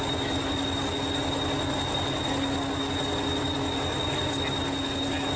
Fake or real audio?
real